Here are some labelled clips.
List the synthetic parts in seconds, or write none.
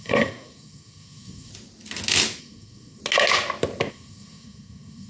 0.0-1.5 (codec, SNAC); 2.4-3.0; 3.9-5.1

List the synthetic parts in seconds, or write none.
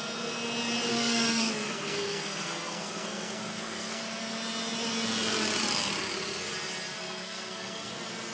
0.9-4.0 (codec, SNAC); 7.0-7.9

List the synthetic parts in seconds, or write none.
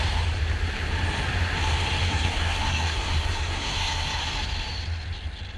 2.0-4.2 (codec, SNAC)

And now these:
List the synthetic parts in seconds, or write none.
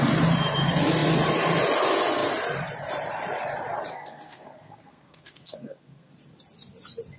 3.9-6.1 (codec, SNAC)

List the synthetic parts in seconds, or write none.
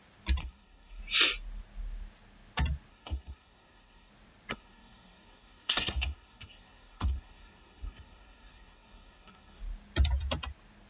0.4-1.0 (codec, SNAC); 2.9-4.1; 4.5-9.6